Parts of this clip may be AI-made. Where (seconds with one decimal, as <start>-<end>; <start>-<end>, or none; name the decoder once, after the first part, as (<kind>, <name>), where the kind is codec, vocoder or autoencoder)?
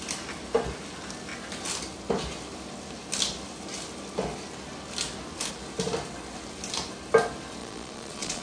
7.6-8.4 (vocoder, Vocos)